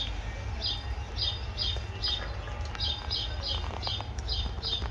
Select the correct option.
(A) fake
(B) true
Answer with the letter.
B